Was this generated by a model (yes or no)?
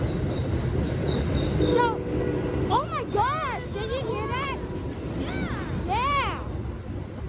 no